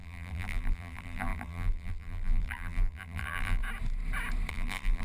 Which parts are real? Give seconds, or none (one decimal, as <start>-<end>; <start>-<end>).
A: 3.6-4.5